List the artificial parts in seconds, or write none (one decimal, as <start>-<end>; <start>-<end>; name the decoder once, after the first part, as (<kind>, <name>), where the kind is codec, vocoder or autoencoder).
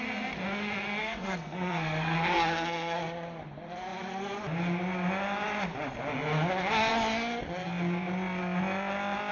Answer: 1.0-3.0 (codec, SNAC)